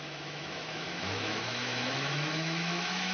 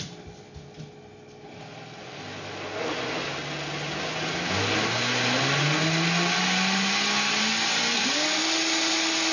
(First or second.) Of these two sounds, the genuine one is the second